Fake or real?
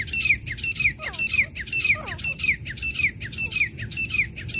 real